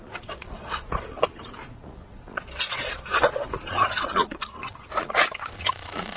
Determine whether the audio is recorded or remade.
remade